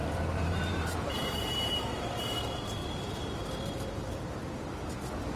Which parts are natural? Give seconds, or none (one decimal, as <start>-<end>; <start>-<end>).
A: 2.4-2.8; 3.4-5.4